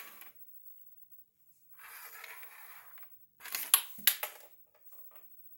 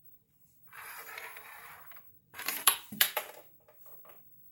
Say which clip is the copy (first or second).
second